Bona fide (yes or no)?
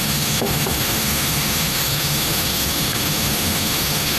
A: no